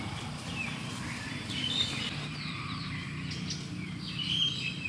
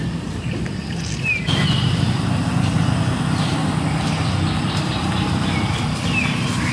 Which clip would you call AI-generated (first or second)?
first